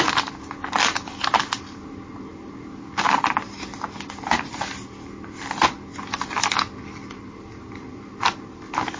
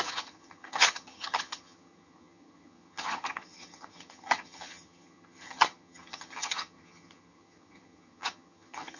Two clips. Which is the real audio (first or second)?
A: first